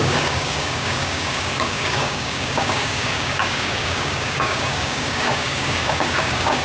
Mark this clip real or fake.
fake